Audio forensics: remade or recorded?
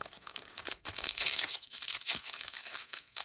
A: remade